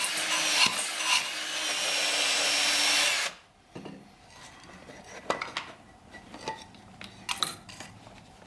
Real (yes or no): yes